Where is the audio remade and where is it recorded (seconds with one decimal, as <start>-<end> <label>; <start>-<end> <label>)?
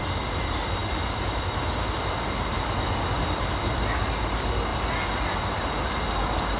0.0-6.6 recorded